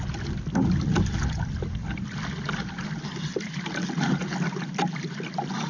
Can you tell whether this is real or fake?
real